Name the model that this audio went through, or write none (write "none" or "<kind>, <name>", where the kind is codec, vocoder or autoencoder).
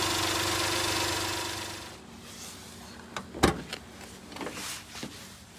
none